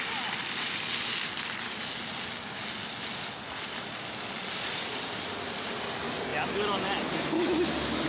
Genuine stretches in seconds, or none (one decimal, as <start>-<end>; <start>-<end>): 0.0-8.1